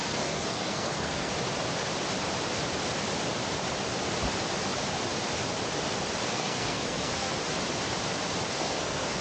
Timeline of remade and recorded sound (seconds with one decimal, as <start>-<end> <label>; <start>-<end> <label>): 0.0-1.3 remade; 1.3-6.2 recorded; 6.2-7.3 remade; 7.3-8.5 recorded; 8.5-9.2 remade